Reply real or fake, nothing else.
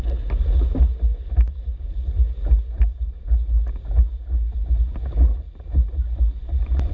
real